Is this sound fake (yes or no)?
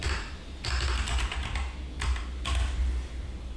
no